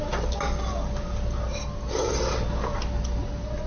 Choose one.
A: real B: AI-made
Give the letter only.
A